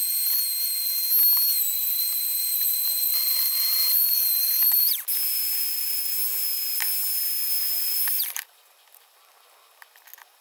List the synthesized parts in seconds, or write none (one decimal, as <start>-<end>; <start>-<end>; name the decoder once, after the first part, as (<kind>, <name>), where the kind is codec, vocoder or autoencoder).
3.8-5.8 (vocoder, BigVGAN v2); 7.6-8.5